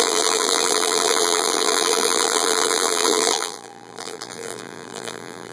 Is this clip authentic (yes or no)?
no